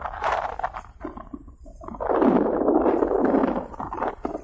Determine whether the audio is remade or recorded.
remade